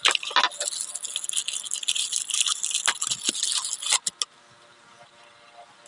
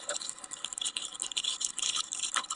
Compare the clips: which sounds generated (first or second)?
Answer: second